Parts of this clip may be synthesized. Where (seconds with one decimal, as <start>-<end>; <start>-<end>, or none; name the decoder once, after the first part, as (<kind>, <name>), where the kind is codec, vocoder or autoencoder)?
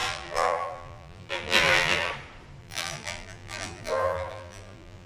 0.0-2.1 (vocoder, BigVGAN v2); 2.6-5.1